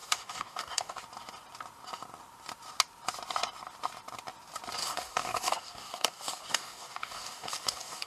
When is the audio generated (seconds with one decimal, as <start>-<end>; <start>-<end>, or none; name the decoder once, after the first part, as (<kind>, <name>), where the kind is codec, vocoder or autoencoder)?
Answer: 0.0-1.0 (codec, DAC); 4.8-8.1